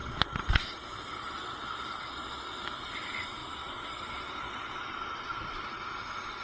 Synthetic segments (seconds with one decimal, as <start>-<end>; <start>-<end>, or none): 0.0-2.8; 3.4-5.8